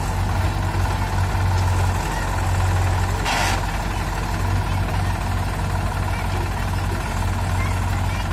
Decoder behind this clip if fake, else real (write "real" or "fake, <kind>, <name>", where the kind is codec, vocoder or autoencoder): real